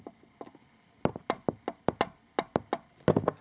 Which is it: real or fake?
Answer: real